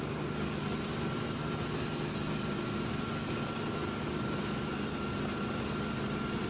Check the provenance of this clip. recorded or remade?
recorded